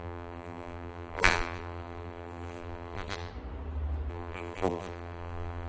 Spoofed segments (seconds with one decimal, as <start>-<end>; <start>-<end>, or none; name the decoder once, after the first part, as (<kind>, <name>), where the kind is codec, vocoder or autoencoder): 0.0-3.3 (vocoder, BigVGAN v2); 4.1-5.7